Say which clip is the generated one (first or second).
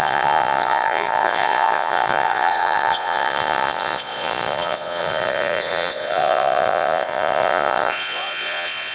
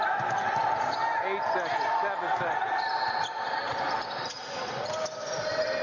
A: first